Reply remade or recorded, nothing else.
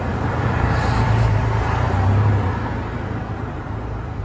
remade